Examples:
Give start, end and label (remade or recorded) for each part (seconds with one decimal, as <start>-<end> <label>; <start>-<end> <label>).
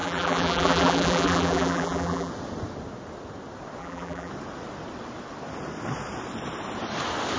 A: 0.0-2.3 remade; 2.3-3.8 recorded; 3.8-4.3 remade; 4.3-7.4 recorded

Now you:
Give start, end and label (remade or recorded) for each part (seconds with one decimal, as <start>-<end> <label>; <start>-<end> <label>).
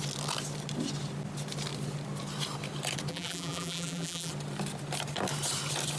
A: 0.0-3.1 recorded; 3.1-4.3 remade; 4.3-6.0 recorded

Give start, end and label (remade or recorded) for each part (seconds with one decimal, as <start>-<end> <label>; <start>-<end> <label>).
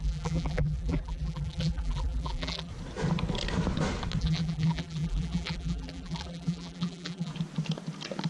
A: 0.0-2.7 remade; 2.7-4.2 recorded; 4.2-7.3 remade; 7.3-8.3 recorded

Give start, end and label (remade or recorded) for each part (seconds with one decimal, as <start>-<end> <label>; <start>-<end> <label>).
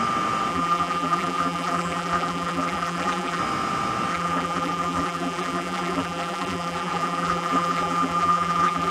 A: 0.0-0.5 recorded; 0.5-3.4 remade; 3.4-4.1 recorded; 4.1-8.9 remade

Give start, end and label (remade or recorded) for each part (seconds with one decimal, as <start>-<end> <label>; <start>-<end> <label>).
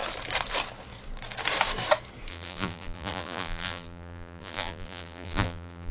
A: 0.0-2.3 recorded; 2.3-5.9 remade